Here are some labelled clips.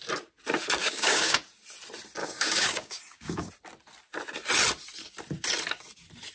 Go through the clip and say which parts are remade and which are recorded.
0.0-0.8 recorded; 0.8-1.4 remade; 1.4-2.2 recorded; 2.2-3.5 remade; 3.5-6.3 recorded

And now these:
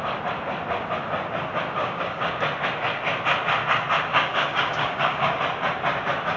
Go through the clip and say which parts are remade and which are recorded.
0.0-1.8 recorded; 1.8-2.4 remade; 2.4-4.1 recorded; 4.1-5.4 remade; 5.4-6.4 recorded

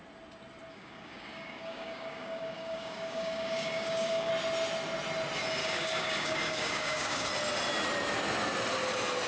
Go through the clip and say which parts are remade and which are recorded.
0.0-0.7 recorded; 0.7-4.3 remade; 4.3-5.6 recorded; 5.6-7.3 remade; 7.3-9.3 recorded

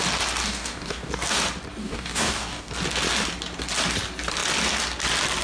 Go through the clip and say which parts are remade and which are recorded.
0.0-0.4 recorded; 0.4-1.1 remade; 1.1-1.8 recorded; 1.8-2.7 remade; 2.7-5.4 recorded

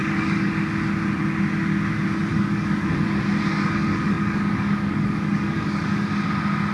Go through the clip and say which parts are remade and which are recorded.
0.0-0.5 remade; 0.5-2.3 recorded; 2.3-2.9 remade; 2.9-3.5 recorded; 3.5-6.1 remade; 6.1-6.7 recorded